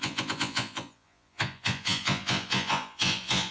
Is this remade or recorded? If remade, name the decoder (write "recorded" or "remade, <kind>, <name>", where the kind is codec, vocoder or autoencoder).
remade, vocoder, Vocos